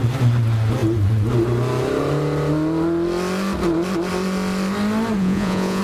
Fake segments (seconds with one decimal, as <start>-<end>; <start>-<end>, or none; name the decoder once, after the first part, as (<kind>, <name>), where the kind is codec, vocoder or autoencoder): 5.2-5.8 (vocoder, Vocos)